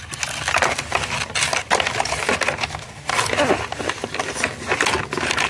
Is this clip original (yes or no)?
yes